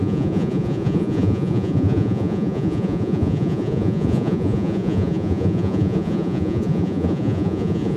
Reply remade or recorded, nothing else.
remade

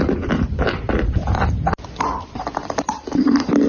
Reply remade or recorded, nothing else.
remade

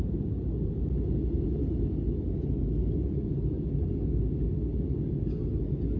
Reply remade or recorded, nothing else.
recorded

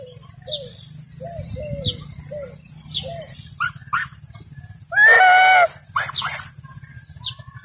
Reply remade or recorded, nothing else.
recorded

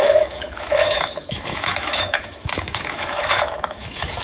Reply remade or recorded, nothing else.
remade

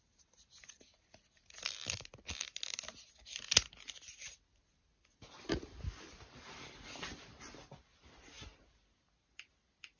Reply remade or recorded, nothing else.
recorded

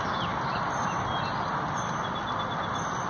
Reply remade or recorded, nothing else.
recorded